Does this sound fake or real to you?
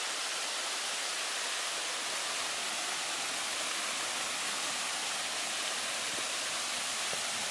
real